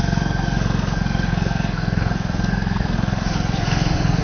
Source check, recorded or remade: remade